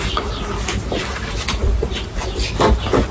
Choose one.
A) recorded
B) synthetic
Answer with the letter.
A